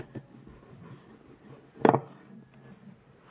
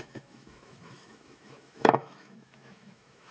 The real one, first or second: first